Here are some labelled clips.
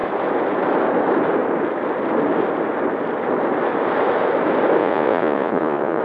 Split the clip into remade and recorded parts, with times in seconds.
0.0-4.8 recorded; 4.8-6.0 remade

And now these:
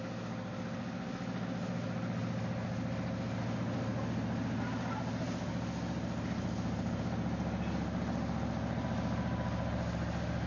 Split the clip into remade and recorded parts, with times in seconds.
0.0-10.5 recorded